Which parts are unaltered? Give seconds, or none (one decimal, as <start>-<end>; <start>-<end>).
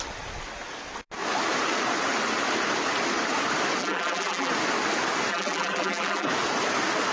0.0-3.8; 4.5-5.3; 6.3-7.1